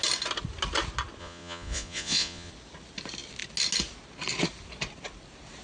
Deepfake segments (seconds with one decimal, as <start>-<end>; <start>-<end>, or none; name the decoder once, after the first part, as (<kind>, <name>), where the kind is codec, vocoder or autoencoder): 1.2-2.5 (vocoder, Vocos)